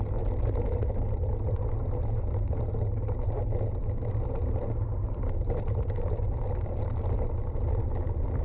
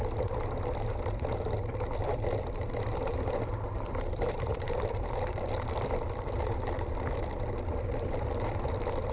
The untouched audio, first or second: first